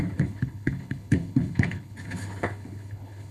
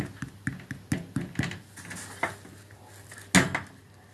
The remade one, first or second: first